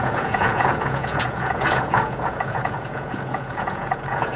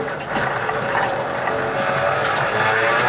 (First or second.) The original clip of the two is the second